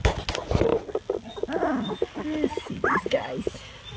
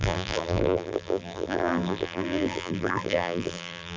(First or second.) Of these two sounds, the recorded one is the first